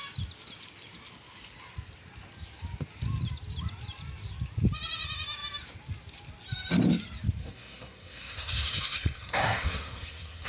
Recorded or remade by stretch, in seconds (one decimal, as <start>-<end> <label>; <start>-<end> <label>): 0.0-7.4 recorded; 7.4-10.5 remade